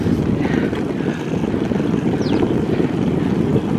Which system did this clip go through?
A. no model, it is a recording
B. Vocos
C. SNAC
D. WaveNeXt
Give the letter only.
A